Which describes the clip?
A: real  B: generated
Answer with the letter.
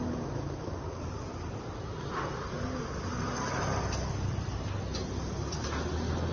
A